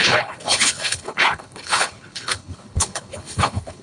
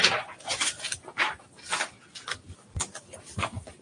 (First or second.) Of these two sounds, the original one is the second